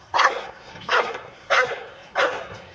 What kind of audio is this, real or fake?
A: fake